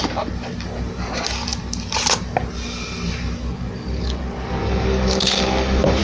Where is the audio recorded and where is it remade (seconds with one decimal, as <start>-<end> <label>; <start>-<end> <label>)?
0.0-4.6 recorded; 4.6-6.0 remade